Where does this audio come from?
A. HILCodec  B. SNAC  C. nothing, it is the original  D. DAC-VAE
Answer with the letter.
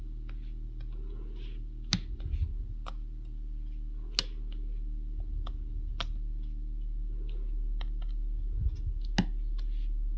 C